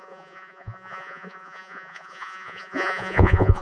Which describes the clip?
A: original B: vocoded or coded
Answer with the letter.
B